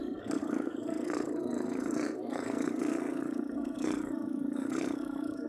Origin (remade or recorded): remade